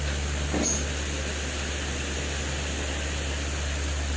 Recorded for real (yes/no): yes